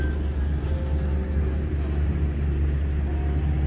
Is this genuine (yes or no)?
yes